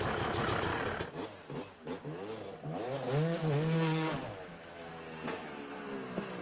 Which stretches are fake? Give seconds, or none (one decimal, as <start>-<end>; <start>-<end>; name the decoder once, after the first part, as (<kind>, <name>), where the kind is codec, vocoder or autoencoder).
0.0-0.7 (autoencoder, DAC-VAE); 4.5-4.9